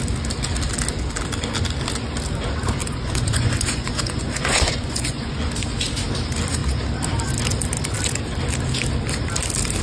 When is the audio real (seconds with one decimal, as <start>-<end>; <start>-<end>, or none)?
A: 0.0-2.8; 5.5-9.8